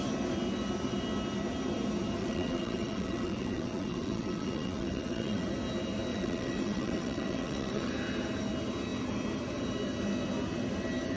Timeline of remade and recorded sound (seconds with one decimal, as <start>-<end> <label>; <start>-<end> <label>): 0.0-2.2 recorded; 2.2-5.5 remade; 5.5-6.1 recorded; 6.1-7.9 remade; 7.9-11.2 recorded